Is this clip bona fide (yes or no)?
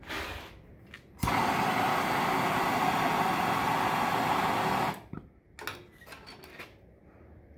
yes